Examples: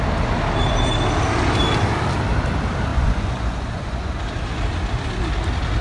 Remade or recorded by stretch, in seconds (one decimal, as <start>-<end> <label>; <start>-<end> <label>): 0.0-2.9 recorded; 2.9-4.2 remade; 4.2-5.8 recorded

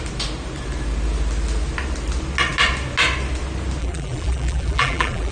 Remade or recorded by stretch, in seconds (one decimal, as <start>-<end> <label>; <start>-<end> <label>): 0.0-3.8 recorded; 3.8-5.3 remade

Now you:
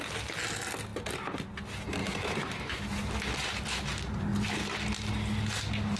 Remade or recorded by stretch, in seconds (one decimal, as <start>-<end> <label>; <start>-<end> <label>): 0.0-2.0 recorded; 2.0-2.8 remade; 2.8-6.0 recorded

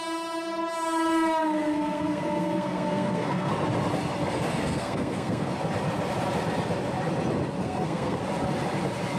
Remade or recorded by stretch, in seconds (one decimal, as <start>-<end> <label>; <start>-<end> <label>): 0.0-1.4 recorded; 1.4-3.5 remade; 3.5-4.5 recorded; 4.5-5.5 remade; 5.5-7.6 recorded; 7.6-8.2 remade; 8.2-9.2 recorded

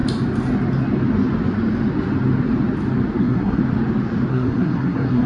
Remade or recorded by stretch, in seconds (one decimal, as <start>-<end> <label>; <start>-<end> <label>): 0.0-3.2 recorded; 3.2-3.6 remade; 3.6-4.3 recorded; 4.3-5.3 remade

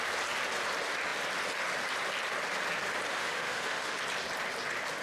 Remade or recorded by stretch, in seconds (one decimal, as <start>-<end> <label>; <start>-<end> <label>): 0.0-3.1 recorded; 3.1-4.0 remade; 4.0-5.0 recorded

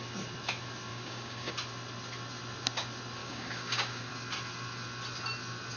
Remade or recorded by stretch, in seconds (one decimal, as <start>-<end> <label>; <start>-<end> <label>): 0.0-0.9 recorded; 0.9-1.5 remade; 1.5-3.2 recorded; 3.2-4.1 remade; 4.1-5.8 recorded

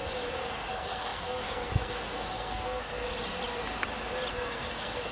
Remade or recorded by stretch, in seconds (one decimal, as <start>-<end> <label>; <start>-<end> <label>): 0.0-0.7 recorded; 0.7-3.0 remade; 3.0-4.3 recorded; 4.3-5.1 remade